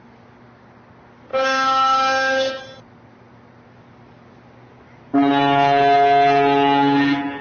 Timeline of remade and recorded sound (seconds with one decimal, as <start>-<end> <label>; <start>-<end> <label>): 0.0-1.3 recorded; 1.3-2.6 remade; 2.6-7.4 recorded